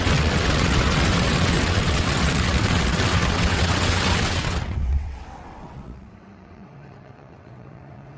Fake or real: fake